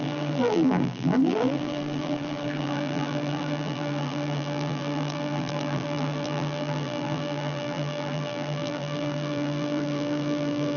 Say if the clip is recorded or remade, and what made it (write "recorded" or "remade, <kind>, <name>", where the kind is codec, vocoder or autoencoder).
remade, vocoder, BigVGAN v2